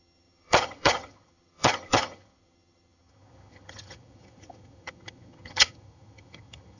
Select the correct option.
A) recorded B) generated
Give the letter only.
B